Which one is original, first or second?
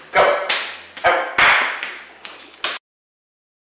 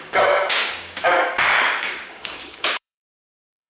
first